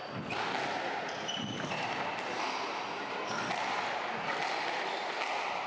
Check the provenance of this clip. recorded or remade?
recorded